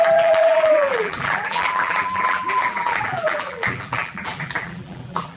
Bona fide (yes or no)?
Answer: no